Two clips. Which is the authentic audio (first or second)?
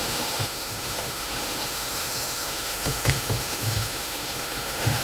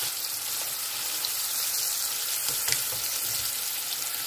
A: second